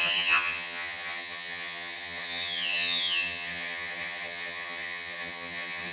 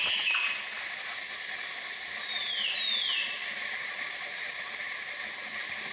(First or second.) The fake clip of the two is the first